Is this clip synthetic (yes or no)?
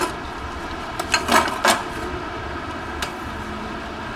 no